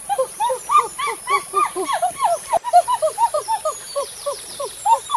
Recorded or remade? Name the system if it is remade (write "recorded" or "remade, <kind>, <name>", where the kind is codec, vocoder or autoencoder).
remade, vocoder, BigVGAN v2